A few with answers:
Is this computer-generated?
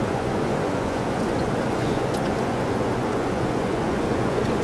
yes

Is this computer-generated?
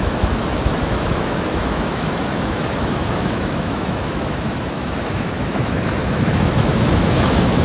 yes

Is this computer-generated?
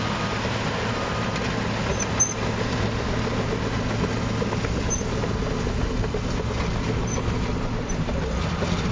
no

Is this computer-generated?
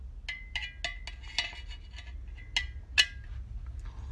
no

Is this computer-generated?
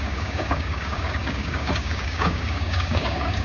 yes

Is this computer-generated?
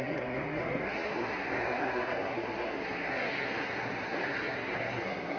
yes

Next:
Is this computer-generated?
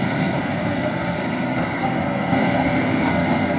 yes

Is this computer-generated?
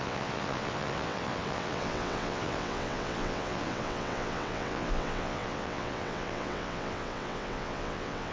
yes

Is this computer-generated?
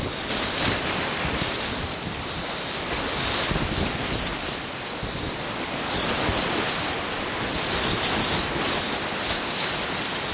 no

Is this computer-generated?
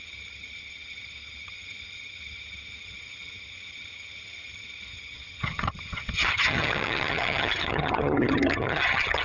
yes